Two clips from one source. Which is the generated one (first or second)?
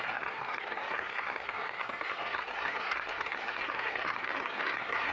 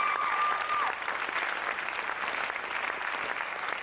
first